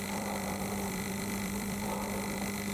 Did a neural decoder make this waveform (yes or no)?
yes